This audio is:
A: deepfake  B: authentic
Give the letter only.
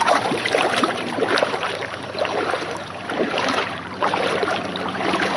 A